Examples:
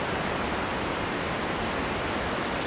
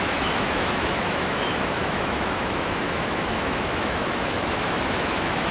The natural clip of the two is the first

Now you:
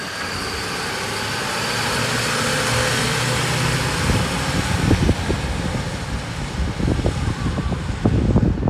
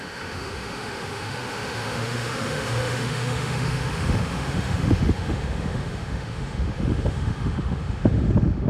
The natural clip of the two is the first